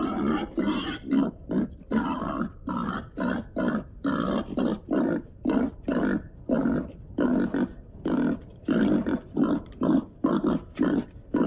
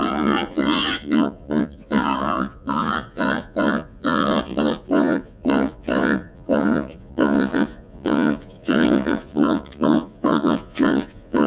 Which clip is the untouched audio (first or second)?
first